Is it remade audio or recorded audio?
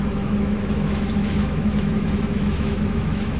remade